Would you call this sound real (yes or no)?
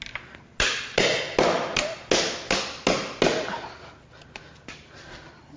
yes